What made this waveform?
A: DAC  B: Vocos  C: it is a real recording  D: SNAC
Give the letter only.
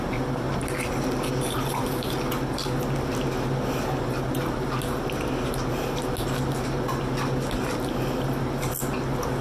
C